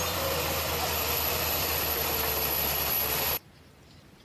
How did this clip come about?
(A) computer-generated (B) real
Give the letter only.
A